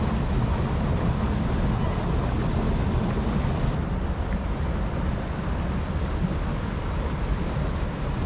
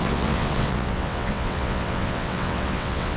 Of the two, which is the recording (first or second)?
first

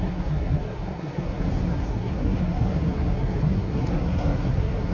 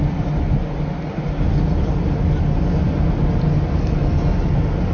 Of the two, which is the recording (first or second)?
second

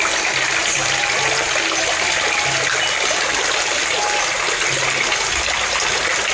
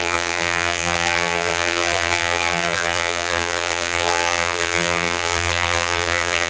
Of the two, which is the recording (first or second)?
first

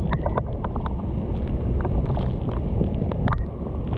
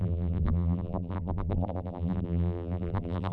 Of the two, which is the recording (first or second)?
first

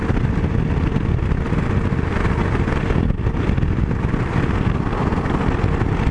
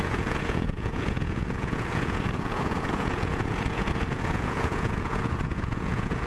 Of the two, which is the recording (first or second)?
first